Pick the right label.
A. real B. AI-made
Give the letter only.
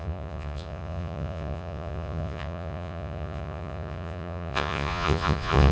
B